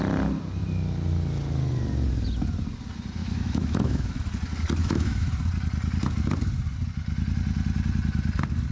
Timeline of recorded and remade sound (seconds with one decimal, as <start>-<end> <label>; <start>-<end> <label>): 0.0-3.2 recorded; 3.2-4.2 remade; 4.2-4.8 recorded; 4.8-5.3 remade; 5.3-8.7 recorded

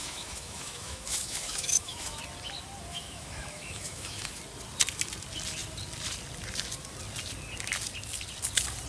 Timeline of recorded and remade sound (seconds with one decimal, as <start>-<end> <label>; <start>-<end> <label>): 0.0-2.2 remade; 2.2-2.9 recorded; 2.9-4.4 remade; 4.4-8.9 recorded

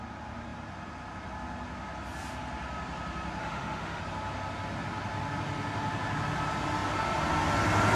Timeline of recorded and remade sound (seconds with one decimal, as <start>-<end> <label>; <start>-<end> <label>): 0.0-3.4 recorded; 3.4-4.0 remade; 4.0-8.0 recorded

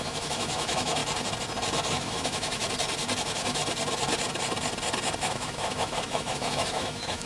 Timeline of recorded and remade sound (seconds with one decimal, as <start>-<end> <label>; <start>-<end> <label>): 0.0-1.0 remade; 1.0-1.9 recorded; 1.9-2.6 remade; 2.6-3.2 recorded; 3.2-3.6 remade; 3.6-5.2 recorded; 5.2-7.3 remade